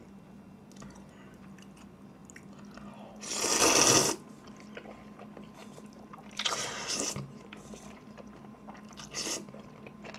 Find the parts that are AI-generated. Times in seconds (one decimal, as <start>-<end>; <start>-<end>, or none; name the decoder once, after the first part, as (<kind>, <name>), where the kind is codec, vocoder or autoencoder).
5.6-8.7 (vocoder, BigVGAN v2)